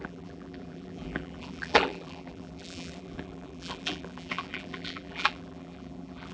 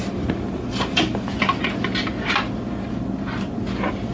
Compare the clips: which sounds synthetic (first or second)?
first